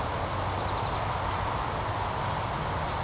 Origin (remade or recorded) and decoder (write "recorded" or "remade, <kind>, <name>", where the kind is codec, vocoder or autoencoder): recorded